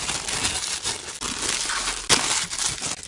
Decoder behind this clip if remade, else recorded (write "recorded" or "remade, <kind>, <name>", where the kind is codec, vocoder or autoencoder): recorded